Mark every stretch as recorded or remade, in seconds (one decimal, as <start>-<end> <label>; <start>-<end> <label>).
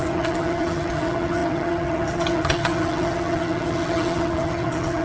0.0-5.0 remade